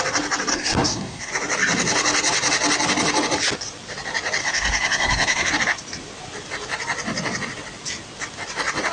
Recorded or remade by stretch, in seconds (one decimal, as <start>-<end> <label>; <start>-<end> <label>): 0.0-0.5 recorded; 0.5-1.3 remade; 1.3-4.4 recorded; 4.4-5.5 remade; 5.5-8.9 recorded